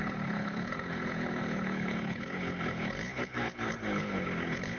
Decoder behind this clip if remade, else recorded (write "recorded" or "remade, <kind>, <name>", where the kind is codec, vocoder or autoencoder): remade, codec, HILCodec